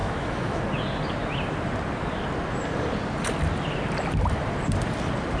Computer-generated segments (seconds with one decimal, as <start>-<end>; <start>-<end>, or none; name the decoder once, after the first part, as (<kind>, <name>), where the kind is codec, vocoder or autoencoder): 0.0-0.6 (autoencoder, DAC-VAE)